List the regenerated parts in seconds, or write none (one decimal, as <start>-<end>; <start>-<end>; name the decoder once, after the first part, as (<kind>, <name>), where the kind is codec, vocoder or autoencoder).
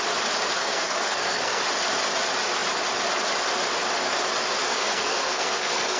0.6-1.6 (codec, SNAC); 4.7-6.0